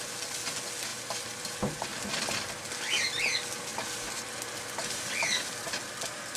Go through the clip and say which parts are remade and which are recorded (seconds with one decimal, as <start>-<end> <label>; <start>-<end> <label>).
0.0-0.9 recorded; 0.9-1.5 remade; 1.5-3.7 recorded; 3.7-6.4 remade

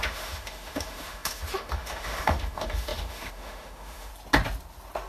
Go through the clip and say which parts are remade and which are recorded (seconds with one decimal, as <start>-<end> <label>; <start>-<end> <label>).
0.0-4.1 remade; 4.1-5.1 recorded